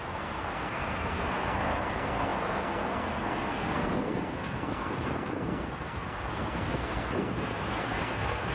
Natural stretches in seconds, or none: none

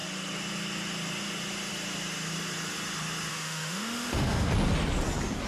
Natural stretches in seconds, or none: 0.0-3.3; 4.5-5.5